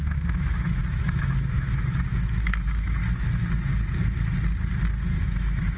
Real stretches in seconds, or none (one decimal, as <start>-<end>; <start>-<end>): 3.0-5.2